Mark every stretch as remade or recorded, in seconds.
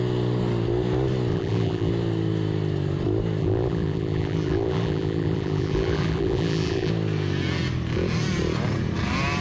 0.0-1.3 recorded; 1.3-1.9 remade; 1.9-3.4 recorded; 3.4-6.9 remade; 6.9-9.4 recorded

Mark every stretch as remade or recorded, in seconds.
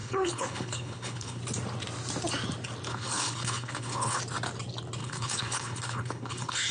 0.0-1.4 remade; 1.4-2.9 recorded; 2.9-4.2 remade; 4.2-5.0 recorded; 5.0-6.7 remade